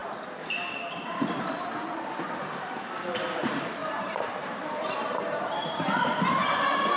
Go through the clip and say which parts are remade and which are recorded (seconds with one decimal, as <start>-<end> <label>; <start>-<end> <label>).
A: 0.0-3.4 recorded; 3.4-7.0 remade